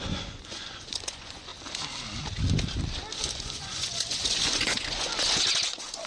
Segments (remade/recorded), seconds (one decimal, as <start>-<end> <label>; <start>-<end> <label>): 0.0-1.5 remade; 1.5-3.3 recorded; 3.3-6.1 remade